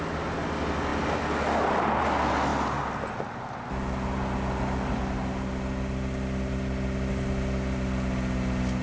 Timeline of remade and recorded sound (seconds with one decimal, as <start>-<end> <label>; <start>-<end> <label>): 0.0-8.8 recorded